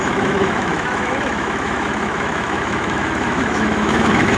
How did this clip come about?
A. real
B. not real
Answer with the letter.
B